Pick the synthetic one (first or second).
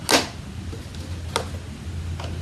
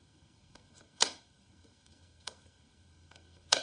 second